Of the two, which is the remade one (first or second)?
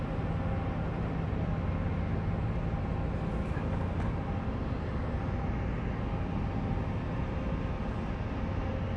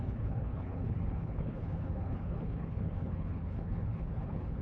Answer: second